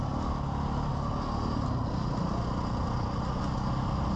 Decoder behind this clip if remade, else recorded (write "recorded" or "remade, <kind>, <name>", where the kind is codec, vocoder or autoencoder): recorded